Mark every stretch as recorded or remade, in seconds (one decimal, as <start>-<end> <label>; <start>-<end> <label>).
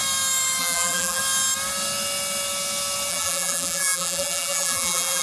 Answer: 0.0-0.6 recorded; 0.6-1.2 remade; 1.2-3.1 recorded; 3.1-5.2 remade